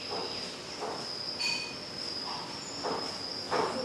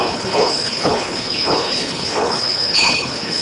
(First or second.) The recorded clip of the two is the first